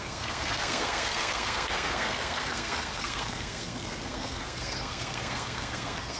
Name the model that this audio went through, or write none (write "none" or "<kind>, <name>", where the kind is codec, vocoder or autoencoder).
codec, SNAC